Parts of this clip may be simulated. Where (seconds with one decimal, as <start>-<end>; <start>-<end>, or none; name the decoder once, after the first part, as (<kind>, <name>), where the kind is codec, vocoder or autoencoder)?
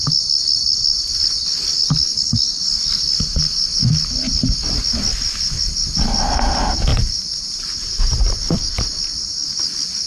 6.9-8.3 (vocoder, BigVGAN v2)